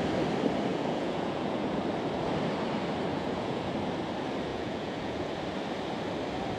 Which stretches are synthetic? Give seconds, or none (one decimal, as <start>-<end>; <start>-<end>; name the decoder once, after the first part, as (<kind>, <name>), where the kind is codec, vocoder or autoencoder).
0.7-1.8 (vocoder, Vocos); 3.1-3.7; 4.5-5.3